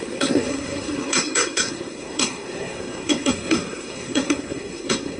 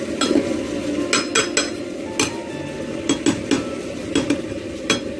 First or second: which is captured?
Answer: second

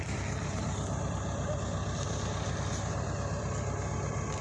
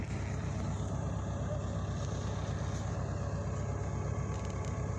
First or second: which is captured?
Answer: second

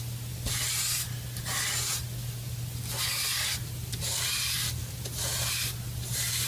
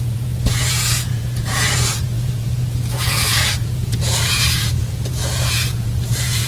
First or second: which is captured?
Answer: first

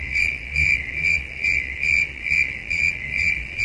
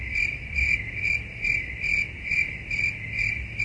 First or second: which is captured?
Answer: second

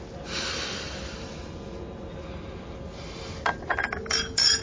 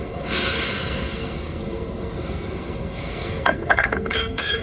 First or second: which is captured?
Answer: first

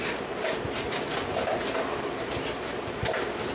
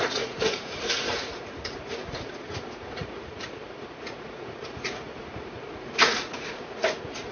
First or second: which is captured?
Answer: first